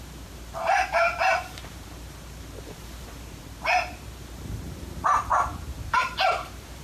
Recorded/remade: remade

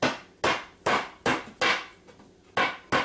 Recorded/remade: recorded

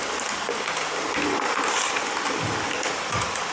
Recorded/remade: recorded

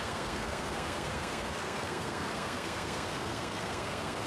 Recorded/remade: remade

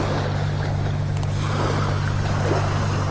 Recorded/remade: recorded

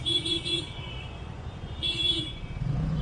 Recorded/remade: remade